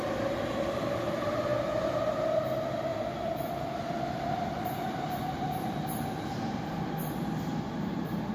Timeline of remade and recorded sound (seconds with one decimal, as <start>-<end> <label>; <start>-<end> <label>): 0.0-2.9 recorded; 2.9-6.9 remade; 6.9-8.3 recorded

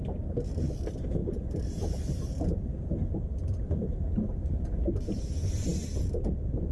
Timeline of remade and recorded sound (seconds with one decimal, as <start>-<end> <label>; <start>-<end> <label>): 0.0-1.2 recorded; 1.2-5.2 remade; 5.2-6.7 recorded

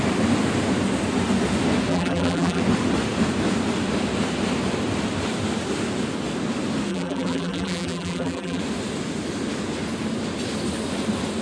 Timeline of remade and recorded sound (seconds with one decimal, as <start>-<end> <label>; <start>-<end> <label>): 0.0-1.9 recorded; 1.9-2.6 remade; 2.6-6.9 recorded; 6.9-8.6 remade; 8.6-11.4 recorded

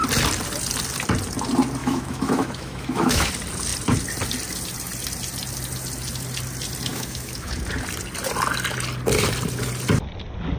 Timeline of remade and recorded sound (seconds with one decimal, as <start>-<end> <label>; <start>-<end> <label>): 0.0-1.8 recorded; 1.8-3.3 remade; 3.3-6.9 recorded; 6.9-7.5 remade; 7.5-10.6 recorded

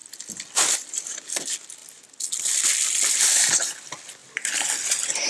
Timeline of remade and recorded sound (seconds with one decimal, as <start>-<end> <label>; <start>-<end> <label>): 0.0-1.4 remade; 1.4-1.8 recorded; 1.8-2.4 remade; 2.4-4.2 recorded; 4.2-4.8 remade; 4.8-5.3 recorded